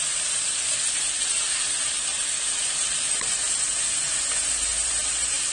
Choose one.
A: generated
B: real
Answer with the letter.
B